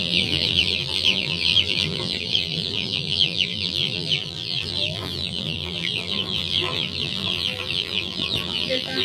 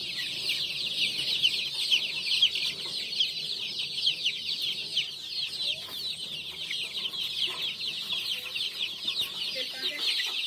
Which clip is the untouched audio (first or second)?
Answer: second